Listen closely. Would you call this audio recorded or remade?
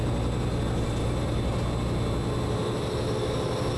recorded